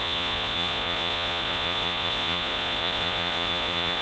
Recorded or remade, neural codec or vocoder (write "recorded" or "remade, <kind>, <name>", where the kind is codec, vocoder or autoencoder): remade, vocoder, Vocos